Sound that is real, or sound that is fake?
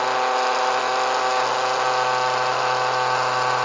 real